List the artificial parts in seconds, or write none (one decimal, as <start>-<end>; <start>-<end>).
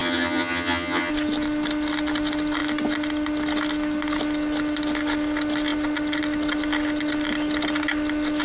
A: 0.0-1.1